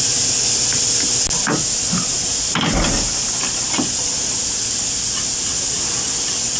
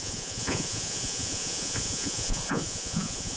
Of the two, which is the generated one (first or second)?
second